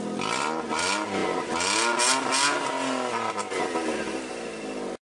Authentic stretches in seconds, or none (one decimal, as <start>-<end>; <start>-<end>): 0.0-5.1